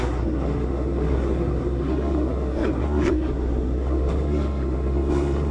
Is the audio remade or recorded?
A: remade